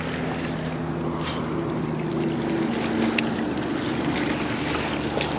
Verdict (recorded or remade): recorded